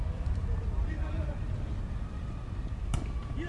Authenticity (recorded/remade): recorded